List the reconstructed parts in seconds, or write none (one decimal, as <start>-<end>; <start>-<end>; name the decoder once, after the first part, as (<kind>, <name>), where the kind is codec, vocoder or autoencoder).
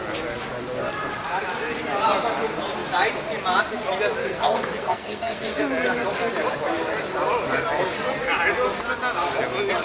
4.2-5.6 (codec, SNAC)